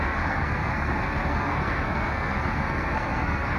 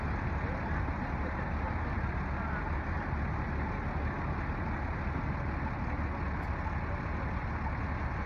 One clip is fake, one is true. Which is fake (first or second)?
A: first